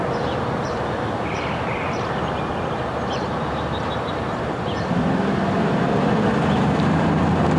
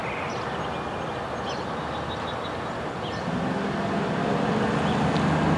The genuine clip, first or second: second